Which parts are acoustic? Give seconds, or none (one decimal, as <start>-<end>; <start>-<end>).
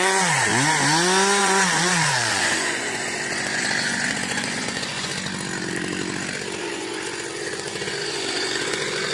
0.5-1.4; 5.1-6.6